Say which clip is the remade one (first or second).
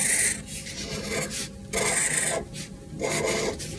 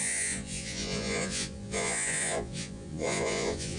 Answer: second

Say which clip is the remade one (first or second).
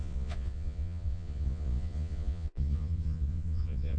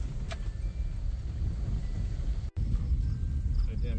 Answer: first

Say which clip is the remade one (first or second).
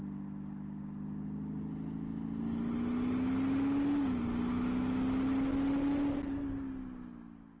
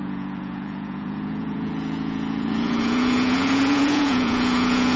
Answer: second